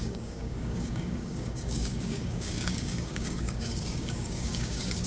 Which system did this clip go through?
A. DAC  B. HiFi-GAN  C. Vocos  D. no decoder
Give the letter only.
A